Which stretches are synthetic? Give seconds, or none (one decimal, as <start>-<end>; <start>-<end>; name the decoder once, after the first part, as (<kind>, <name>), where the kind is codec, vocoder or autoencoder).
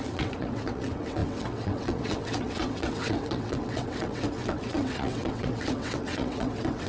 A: 0.0-6.9 (vocoder, WaveNeXt)